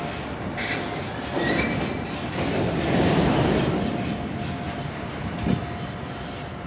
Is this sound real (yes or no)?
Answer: yes